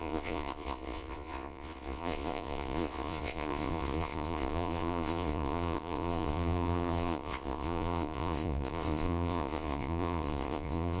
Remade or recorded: remade